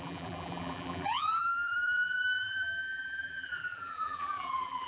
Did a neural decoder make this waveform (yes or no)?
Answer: yes